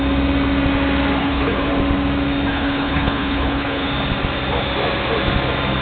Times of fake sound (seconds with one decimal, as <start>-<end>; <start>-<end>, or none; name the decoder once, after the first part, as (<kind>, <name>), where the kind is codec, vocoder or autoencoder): 1.2-1.7 (codec, HILCodec); 2.5-3.9

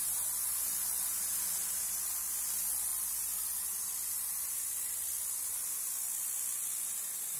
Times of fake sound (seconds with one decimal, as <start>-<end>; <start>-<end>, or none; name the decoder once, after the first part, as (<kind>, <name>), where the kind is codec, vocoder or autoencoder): none